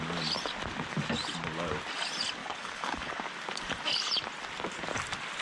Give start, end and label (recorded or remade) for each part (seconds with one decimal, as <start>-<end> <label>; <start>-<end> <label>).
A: 0.0-2.4 recorded; 2.4-3.2 remade; 3.2-5.4 recorded